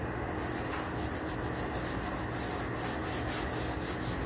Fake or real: real